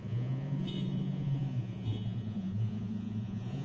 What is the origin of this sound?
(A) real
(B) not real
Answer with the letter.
B